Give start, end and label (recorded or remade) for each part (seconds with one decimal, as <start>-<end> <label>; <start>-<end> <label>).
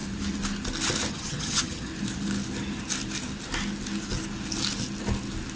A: 0.0-1.1 recorded; 1.1-1.9 remade; 1.9-5.6 recorded